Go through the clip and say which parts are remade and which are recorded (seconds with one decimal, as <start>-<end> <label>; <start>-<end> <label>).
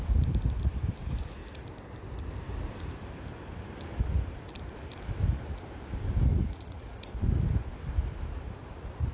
0.0-6.3 recorded; 6.3-7.0 remade; 7.0-9.1 recorded